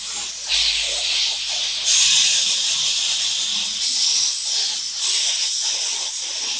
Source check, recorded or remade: recorded